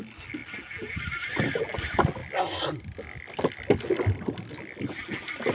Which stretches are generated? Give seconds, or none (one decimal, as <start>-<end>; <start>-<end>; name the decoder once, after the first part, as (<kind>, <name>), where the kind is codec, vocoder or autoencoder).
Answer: none